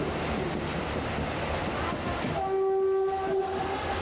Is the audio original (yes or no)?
yes